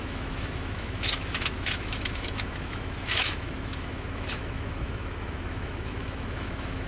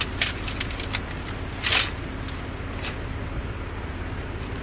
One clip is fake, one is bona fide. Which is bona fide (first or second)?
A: second